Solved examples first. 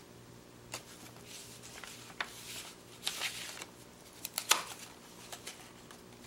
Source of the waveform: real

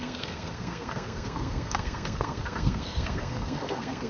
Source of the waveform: fake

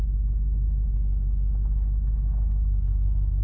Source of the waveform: real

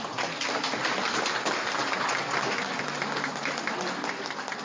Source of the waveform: real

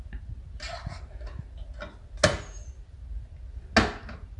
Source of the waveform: real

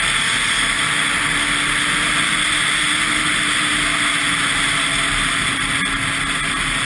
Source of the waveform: real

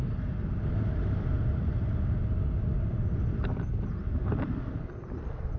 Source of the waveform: real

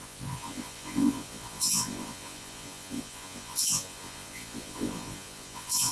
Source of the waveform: fake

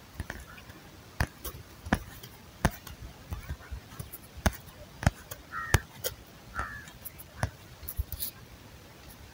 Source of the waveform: real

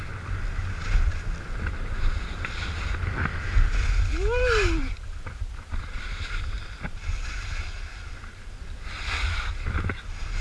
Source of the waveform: real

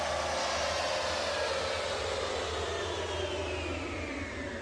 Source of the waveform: real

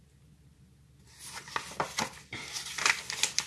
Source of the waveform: real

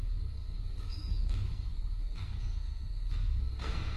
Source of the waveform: fake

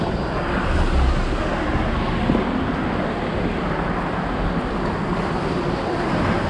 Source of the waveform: real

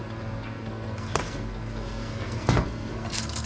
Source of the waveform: fake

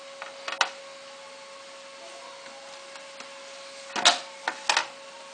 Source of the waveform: real